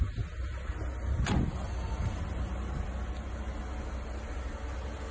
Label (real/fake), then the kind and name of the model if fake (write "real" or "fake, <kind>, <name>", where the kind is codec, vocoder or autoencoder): real